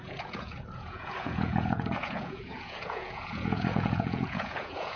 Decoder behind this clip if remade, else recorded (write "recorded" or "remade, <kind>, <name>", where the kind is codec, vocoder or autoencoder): remade, vocoder, Vocos